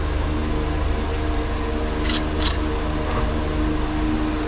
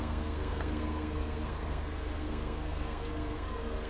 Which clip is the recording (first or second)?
first